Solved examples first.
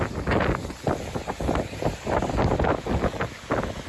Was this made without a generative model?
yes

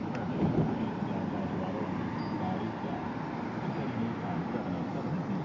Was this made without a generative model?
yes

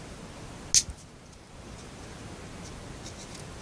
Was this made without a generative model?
yes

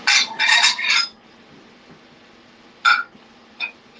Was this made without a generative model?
yes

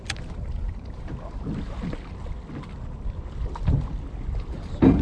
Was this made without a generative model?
yes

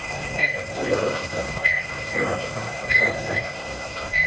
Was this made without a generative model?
no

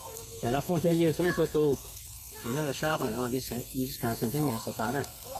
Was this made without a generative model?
no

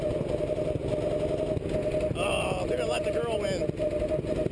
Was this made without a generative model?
yes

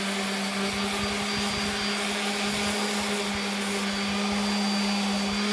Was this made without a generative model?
yes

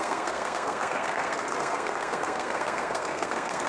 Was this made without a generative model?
no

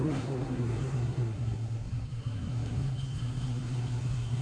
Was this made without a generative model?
no